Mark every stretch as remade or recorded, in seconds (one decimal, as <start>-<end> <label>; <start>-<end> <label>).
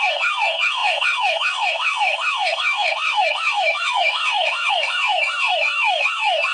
0.0-6.5 remade